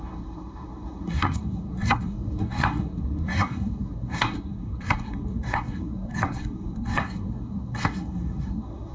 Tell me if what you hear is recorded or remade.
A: remade